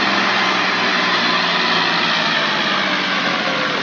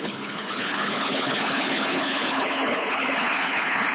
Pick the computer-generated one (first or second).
second